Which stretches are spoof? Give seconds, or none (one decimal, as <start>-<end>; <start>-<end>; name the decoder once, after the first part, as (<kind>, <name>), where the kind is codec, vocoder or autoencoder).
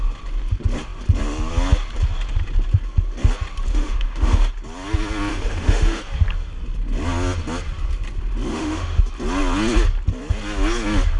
3.7-4.5 (autoencoder, DAC-VAE); 5.3-6.0; 8.5-9.0